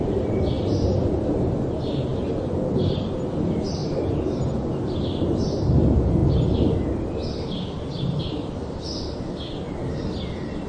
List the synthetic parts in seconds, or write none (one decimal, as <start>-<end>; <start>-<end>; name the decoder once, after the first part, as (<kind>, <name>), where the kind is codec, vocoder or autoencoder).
none